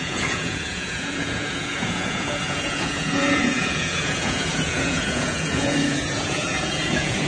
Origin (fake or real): fake